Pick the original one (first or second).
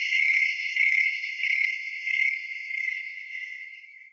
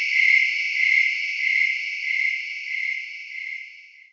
second